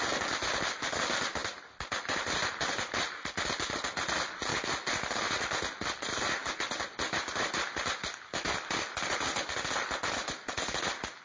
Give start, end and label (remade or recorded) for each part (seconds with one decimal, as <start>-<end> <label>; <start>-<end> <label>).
0.0-11.2 recorded